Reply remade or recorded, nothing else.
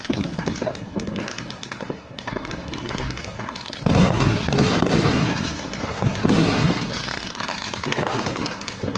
remade